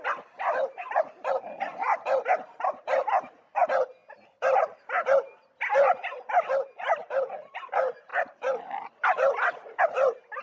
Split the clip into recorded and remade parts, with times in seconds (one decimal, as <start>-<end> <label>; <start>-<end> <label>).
0.0-10.4 recorded